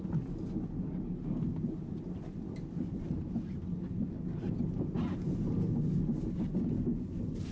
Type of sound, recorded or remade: recorded